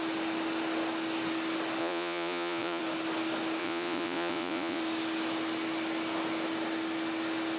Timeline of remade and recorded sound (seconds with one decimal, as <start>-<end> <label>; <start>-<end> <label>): 0.0-1.8 recorded; 1.8-2.8 remade; 2.8-3.6 recorded; 3.6-4.8 remade; 4.8-7.6 recorded

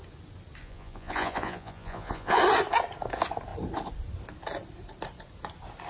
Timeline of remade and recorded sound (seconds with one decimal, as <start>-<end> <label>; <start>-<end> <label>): 0.0-0.6 recorded; 0.6-2.4 remade; 2.4-5.9 recorded

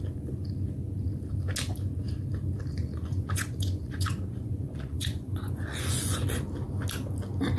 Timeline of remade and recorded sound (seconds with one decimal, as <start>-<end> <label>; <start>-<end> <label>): 0.0-2.7 recorded; 2.7-6.2 remade; 6.2-7.6 recorded

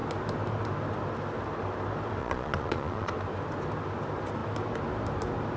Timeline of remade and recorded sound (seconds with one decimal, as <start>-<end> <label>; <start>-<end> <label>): 0.0-2.2 recorded; 2.2-3.1 remade; 3.1-5.6 recorded

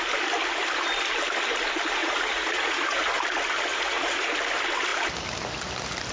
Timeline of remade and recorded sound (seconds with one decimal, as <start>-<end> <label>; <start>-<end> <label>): 0.0-2.0 recorded; 2.0-3.1 remade; 3.1-3.7 recorded; 3.7-4.3 remade; 4.3-6.1 recorded

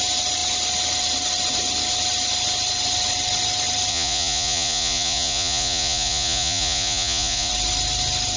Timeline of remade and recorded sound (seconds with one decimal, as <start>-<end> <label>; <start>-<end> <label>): 0.0-3.9 recorded; 3.9-7.5 remade; 7.5-8.4 recorded

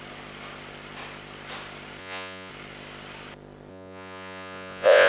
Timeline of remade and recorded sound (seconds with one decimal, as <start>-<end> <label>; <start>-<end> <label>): 0.0-2.0 recorded; 2.0-2.5 remade; 2.5-3.7 recorded; 3.7-5.1 remade